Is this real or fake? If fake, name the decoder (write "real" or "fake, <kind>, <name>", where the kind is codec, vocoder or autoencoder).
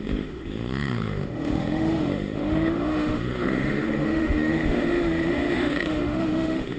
fake, autoencoder, DAC-VAE